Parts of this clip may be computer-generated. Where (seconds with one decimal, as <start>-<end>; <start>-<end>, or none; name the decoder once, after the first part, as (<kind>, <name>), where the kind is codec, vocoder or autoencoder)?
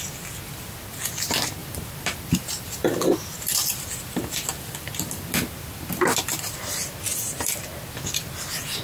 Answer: 1.6-6.6 (vocoder, BigVGAN v2); 7.1-7.7